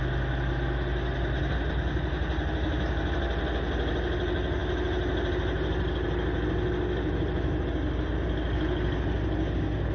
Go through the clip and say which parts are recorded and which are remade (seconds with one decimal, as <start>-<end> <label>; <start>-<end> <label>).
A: 0.0-9.9 recorded